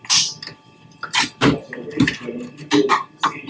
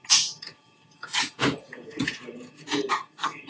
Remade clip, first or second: second